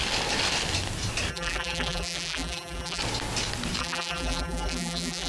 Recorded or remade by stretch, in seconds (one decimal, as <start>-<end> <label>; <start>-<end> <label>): 0.0-1.3 recorded; 1.3-3.0 remade; 3.0-3.8 recorded; 3.8-5.3 remade